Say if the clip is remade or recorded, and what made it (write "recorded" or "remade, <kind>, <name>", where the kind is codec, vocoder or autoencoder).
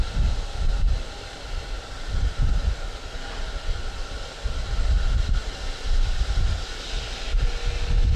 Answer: recorded